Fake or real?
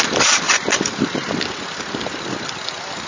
fake